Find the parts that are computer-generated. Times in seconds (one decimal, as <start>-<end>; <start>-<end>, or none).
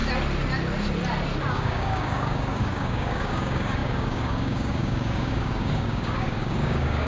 1.5-7.1